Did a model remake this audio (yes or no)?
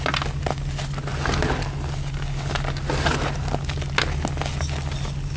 no